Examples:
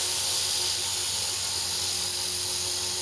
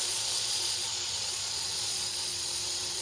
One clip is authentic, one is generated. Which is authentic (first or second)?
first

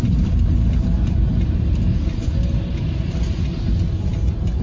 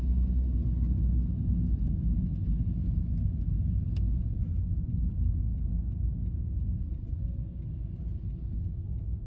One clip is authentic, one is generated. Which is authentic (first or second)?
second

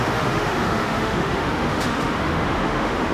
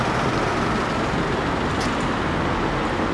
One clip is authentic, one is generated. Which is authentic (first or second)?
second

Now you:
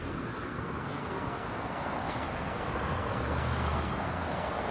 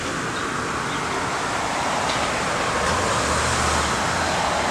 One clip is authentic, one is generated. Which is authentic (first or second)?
second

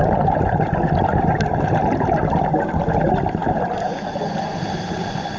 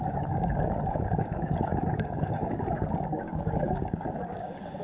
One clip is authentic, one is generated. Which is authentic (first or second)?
first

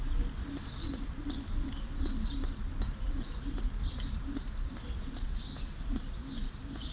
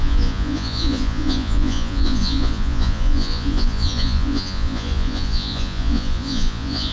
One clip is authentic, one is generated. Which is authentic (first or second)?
first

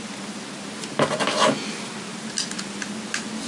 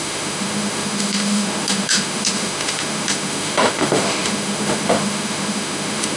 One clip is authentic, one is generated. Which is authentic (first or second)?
first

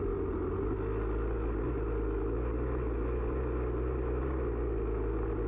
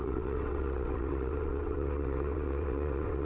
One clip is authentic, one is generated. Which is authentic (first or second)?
first